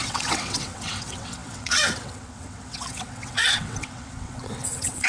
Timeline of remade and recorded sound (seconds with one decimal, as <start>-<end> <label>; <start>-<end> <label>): 0.0-5.1 remade